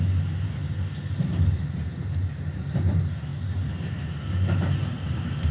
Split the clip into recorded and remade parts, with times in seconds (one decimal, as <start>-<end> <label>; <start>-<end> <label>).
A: 0.0-5.5 recorded